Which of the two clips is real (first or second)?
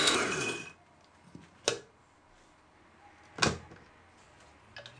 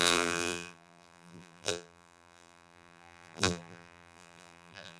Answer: first